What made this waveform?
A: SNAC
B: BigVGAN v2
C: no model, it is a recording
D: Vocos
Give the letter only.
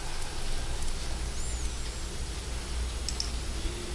C